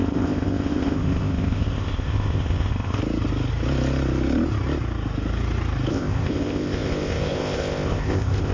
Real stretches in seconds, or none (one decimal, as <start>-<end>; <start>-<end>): 3.0-5.9